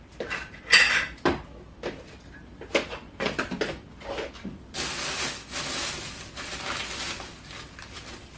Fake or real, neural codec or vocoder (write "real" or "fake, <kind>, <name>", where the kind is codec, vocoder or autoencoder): real